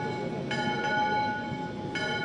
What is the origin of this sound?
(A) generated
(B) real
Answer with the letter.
B